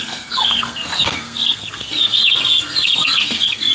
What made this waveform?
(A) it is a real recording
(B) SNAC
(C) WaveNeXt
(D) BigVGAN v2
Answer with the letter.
B